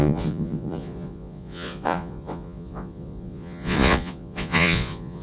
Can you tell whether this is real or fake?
fake